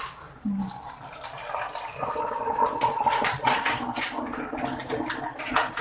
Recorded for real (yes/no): yes